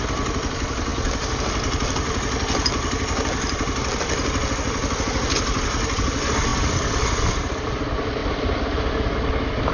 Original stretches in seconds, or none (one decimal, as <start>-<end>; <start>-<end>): 0.0-6.5; 7.4-9.7

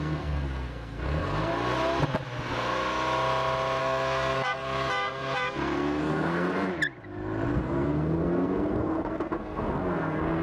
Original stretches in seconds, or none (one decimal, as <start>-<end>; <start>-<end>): 1.5-3.8; 6.7-7.5

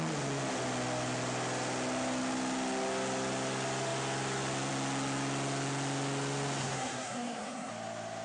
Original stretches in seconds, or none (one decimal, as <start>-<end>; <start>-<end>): 0.0-6.6; 7.7-8.2

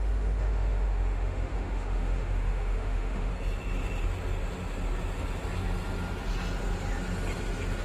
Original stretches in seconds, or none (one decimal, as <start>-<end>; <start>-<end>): 3.3-7.8